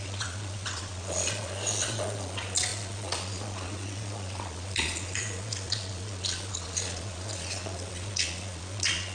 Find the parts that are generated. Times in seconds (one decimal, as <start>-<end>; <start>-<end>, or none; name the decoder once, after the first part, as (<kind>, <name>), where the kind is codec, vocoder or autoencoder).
0.0-9.1 (vocoder, Vocos)